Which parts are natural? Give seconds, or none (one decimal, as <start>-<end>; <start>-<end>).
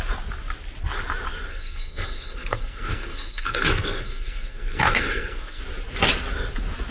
0.0-1.5; 5.6-6.9